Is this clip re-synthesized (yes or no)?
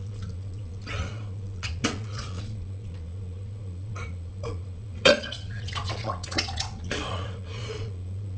yes